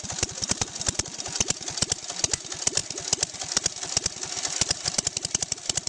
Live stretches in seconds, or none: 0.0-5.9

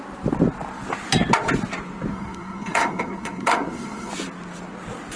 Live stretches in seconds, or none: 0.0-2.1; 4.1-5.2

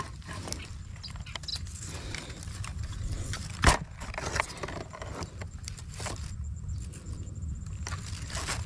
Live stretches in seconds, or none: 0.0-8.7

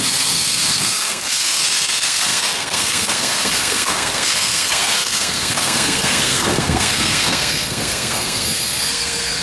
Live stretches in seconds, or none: none

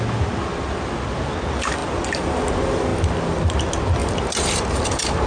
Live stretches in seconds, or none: 0.0-5.3

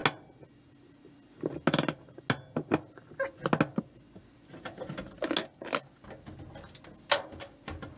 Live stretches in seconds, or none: 0.0-8.0